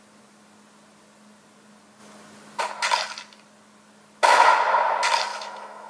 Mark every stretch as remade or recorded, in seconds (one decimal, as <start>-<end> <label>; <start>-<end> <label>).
0.0-5.3 recorded; 5.3-5.9 remade